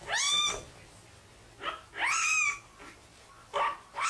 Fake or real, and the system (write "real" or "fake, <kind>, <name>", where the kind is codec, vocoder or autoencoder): real